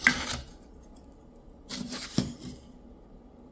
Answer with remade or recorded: recorded